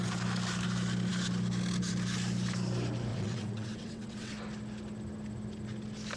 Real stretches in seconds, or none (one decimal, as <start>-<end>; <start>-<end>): 0.0-3.1; 4.3-6.2